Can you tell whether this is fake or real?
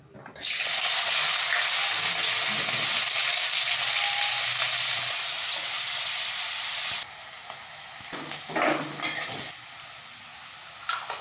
real